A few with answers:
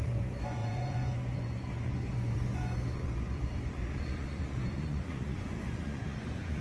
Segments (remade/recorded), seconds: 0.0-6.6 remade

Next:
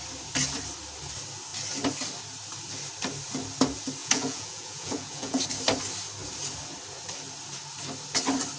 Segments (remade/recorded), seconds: 0.0-4.0 recorded; 4.0-5.4 remade; 5.4-8.6 recorded

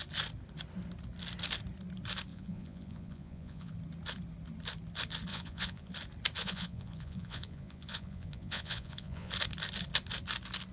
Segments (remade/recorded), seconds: 0.0-2.3 recorded; 2.3-3.7 remade; 3.7-5.3 recorded; 5.3-5.9 remade; 5.9-6.4 recorded; 6.4-9.3 remade; 9.3-10.7 recorded

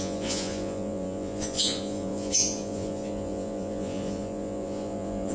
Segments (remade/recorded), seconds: 0.0-5.3 remade

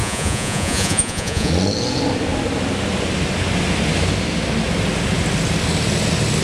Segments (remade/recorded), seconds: 0.0-1.5 remade; 1.5-6.4 recorded

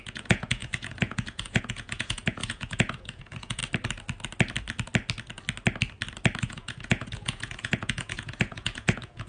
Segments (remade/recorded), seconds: 0.0-3.6 remade; 3.6-6.4 recorded; 6.4-9.3 remade

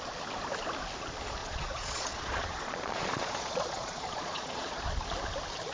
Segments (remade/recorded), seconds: 0.0-1.4 recorded; 1.4-4.8 remade; 4.8-5.7 recorded

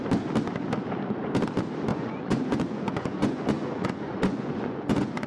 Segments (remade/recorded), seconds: 0.0-1.9 recorded; 1.9-5.3 remade